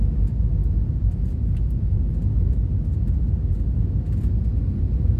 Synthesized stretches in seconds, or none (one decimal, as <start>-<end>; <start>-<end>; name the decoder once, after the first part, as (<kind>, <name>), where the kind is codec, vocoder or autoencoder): none